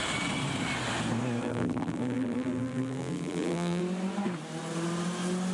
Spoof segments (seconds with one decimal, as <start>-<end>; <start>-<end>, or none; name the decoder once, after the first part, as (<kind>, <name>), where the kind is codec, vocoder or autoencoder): 1.4-3.8 (vocoder, BigVGAN v2)